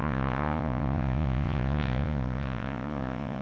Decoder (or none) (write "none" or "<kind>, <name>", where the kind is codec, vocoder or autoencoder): vocoder, Vocos